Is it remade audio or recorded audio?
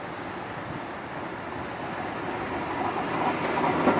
recorded